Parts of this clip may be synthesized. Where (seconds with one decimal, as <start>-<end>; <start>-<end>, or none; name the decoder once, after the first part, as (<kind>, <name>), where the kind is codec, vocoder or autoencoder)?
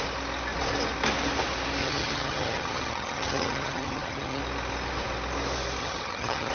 1.8-4.4 (vocoder, HiFi-GAN); 5.8-6.5